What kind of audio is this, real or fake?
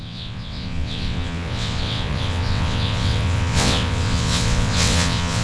fake